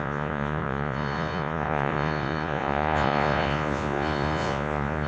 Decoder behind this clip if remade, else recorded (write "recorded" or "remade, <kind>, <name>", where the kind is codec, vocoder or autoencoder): remade, vocoder, Vocos